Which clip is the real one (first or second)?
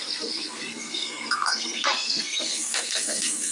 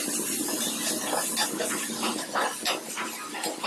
second